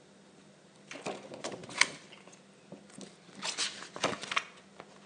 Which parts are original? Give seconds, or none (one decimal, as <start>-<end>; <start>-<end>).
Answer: 0.0-5.1